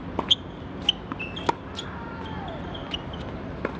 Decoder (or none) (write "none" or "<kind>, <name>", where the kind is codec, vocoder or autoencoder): none